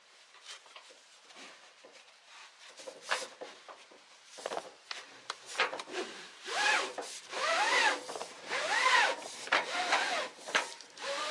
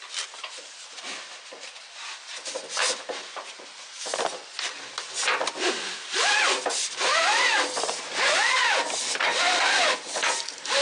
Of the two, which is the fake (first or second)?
first